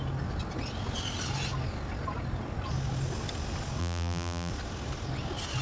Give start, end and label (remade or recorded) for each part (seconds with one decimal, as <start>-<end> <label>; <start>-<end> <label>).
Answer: 0.0-3.8 recorded; 3.8-4.5 remade; 4.5-5.6 recorded